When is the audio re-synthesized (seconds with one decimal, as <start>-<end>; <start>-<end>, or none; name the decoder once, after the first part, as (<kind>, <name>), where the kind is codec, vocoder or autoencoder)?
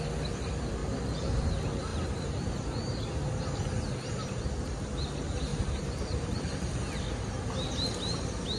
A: 0.8-1.5 (vocoder, BigVGAN v2); 5.5-7.0